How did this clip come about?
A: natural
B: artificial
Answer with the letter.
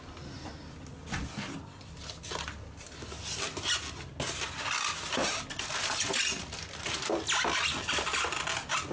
A